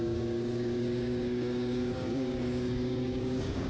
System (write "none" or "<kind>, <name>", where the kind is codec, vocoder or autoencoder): codec, DAC